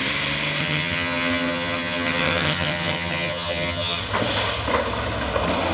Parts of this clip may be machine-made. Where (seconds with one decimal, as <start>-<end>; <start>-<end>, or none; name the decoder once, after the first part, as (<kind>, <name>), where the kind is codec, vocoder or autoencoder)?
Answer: 0.6-4.0 (vocoder, HiFi-GAN)